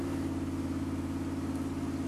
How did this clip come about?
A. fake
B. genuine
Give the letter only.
B